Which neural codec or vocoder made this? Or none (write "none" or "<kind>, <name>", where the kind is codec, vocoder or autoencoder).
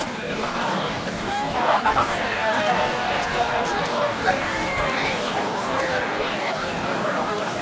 codec, DAC